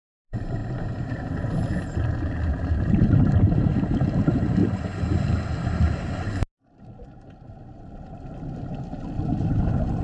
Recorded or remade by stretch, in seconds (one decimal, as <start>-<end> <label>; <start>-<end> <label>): 0.0-4.6 remade; 4.6-9.4 recorded; 9.4-10.0 remade